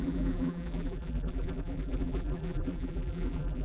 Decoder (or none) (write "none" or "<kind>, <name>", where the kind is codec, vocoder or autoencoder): vocoder, BigVGAN v2